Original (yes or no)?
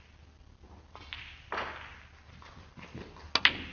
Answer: yes